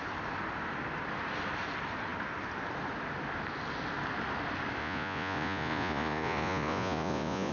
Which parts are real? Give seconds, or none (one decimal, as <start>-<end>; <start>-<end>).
0.0-4.8